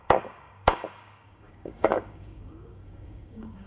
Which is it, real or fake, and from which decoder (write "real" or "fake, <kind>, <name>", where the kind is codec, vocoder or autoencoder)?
fake, codec, DAC